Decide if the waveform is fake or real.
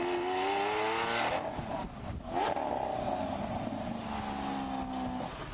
real